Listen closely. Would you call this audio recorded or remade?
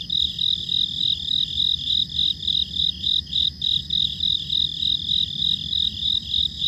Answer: recorded